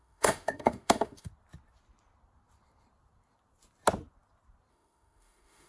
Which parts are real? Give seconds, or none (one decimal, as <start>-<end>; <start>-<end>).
1.3-4.7